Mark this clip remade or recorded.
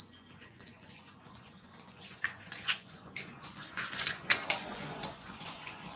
remade